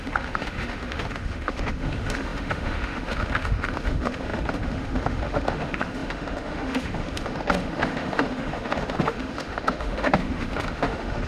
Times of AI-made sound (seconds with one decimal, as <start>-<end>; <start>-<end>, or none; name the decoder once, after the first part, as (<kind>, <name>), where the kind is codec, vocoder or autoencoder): 0.0-11.3 (autoencoder, DAC-VAE)